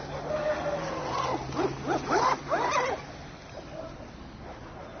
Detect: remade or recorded recorded